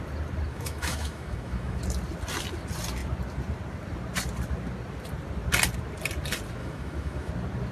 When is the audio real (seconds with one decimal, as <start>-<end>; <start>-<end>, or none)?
0.0-0.5; 1.8-6.6; 7.3-7.7